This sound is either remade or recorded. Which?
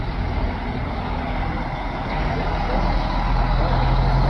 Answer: recorded